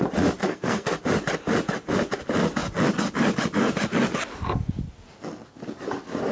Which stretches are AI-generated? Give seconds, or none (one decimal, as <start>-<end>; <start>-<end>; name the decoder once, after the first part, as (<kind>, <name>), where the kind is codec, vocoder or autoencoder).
0.4-1.0 (codec, SNAC)